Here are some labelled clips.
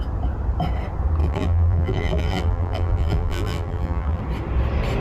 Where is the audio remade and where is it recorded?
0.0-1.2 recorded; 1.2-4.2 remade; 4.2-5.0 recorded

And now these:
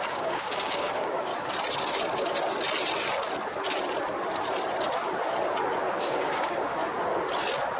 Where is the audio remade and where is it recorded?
0.0-1.3 remade; 1.3-6.0 recorded; 6.0-6.8 remade; 6.8-7.8 recorded

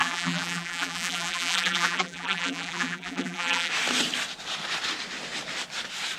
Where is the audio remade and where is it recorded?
0.0-3.7 remade; 3.7-6.2 recorded

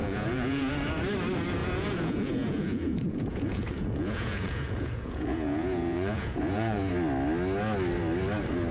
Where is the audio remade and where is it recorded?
0.0-0.7 remade; 0.7-1.6 recorded; 1.6-6.8 remade; 6.8-8.7 recorded

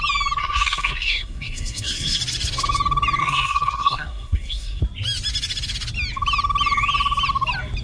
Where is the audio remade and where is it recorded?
0.0-0.4 recorded; 0.4-2.2 remade; 2.2-3.2 recorded; 3.2-4.8 remade; 4.8-7.8 recorded

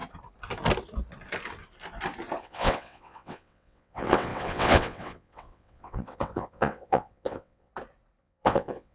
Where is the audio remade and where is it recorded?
0.0-2.4 recorded; 2.4-7.7 remade; 7.7-8.2 recorded; 8.2-8.9 remade